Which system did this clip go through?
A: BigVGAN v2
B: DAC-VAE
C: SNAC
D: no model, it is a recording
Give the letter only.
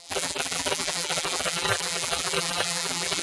A